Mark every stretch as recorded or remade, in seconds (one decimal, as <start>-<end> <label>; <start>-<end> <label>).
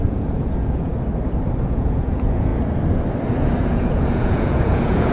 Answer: 0.0-0.9 remade; 0.9-1.6 recorded; 1.6-2.5 remade; 2.5-3.6 recorded; 3.6-5.1 remade